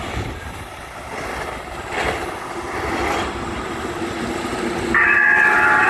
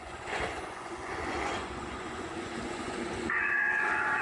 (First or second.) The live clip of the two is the first